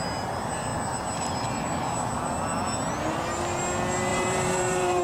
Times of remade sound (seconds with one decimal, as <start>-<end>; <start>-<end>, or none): 4.1-5.0